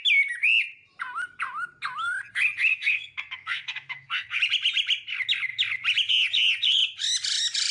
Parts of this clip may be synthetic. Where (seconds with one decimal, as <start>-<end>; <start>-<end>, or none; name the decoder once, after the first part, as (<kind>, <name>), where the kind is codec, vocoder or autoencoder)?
2.7-4.4 (codec, SNAC)